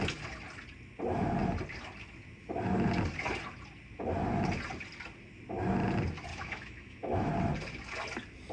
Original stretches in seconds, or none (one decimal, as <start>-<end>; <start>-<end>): 0.0-6.3; 7.3-8.5